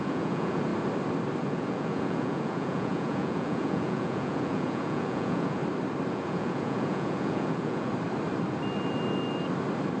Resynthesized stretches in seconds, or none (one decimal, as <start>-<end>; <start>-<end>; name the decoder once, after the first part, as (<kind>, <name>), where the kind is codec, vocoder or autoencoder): 0.0-0.7 (vocoder, Vocos); 1.4-5.6; 6.1-7.9